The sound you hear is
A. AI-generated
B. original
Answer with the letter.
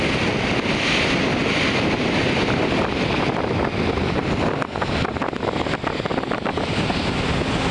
B